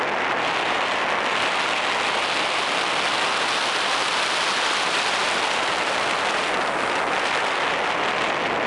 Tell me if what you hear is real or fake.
real